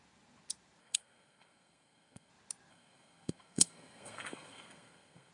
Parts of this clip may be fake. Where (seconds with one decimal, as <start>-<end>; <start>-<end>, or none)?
0.8-2.3; 2.7-5.3